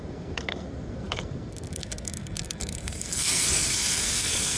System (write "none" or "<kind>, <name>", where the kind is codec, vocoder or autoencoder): codec, SNAC